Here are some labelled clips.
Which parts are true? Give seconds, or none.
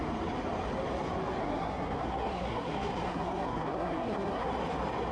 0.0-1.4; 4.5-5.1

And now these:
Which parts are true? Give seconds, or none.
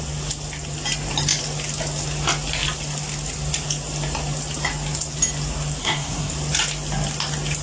0.0-5.8; 6.3-7.6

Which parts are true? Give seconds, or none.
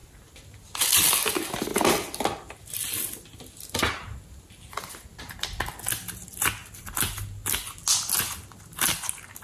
0.0-9.4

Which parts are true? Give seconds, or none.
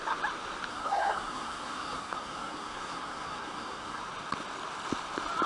0.0-0.7; 4.0-5.5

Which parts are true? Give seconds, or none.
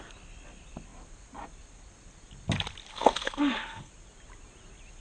0.0-2.9; 3.9-5.0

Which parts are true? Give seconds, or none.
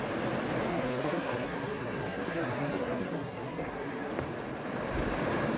0.0-0.7; 4.1-5.6